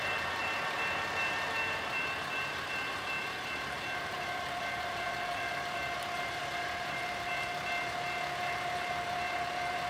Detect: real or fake fake